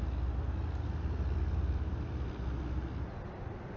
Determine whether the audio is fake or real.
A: real